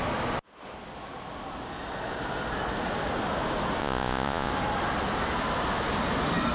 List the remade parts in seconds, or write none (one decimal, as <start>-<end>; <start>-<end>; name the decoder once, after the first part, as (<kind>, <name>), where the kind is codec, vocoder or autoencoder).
3.8-4.5 (vocoder, Vocos)